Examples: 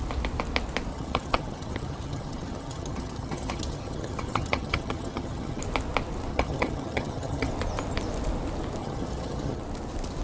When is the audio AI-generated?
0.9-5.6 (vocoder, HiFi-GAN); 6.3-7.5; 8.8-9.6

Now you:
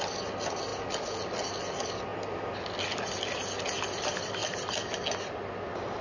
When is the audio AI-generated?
none

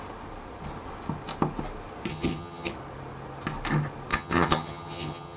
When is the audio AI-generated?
2.1-2.7 (vocoder, HiFi-GAN); 4.1-5.4

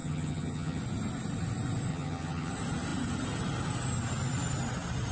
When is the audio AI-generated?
0.0-0.8 (vocoder, HiFi-GAN); 1.9-2.5

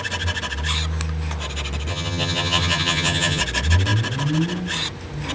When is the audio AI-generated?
1.9-3.4 (vocoder, HiFi-GAN)

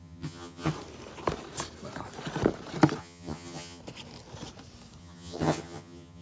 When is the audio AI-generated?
0.0-0.7 (vocoder, HiFi-GAN); 3.0-3.8; 5.0-6.2

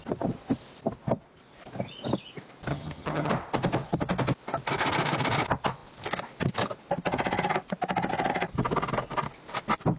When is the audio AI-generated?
2.7-3.3 (vocoder, HiFi-GAN)

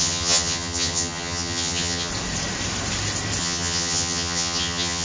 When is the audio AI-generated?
0.0-2.1 (vocoder, HiFi-GAN); 3.4-5.0